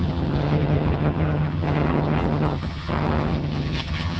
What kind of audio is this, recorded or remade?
remade